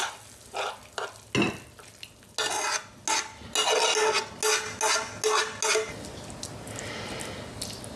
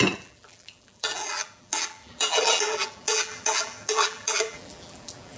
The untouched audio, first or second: first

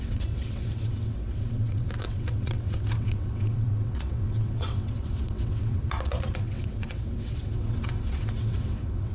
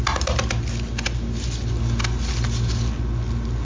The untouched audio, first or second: second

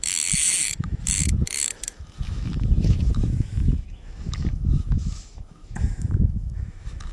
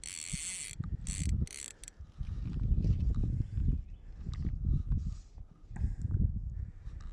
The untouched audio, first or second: second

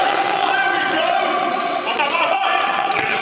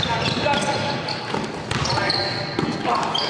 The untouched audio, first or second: second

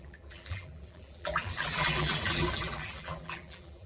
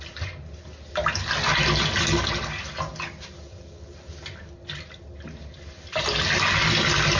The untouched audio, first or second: second